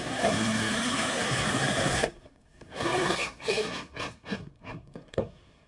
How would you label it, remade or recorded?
remade